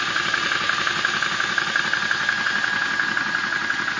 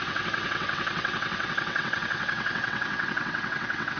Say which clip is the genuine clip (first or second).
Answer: first